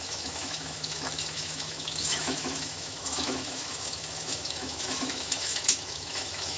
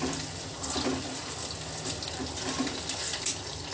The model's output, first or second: first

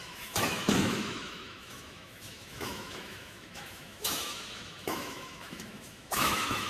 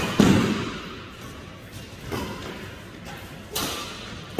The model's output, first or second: first